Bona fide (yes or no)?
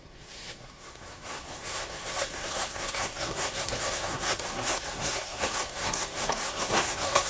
no